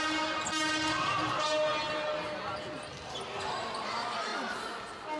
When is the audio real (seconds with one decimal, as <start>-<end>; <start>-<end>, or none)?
1.7-2.9; 4.3-5.2